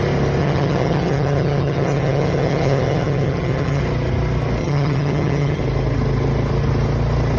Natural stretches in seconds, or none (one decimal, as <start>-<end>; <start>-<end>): 0.0-0.4; 3.8-4.6; 5.6-7.4